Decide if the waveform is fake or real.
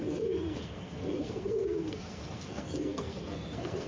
fake